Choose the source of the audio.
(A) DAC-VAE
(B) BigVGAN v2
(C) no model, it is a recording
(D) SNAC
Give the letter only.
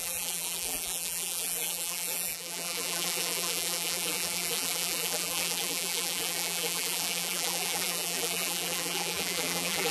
B